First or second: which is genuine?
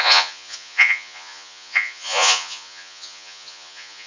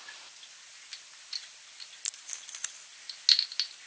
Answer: second